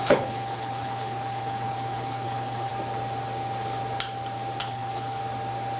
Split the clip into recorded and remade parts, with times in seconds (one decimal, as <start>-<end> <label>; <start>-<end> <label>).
0.0-2.7 remade; 2.7-4.6 recorded; 4.6-5.2 remade; 5.2-5.8 recorded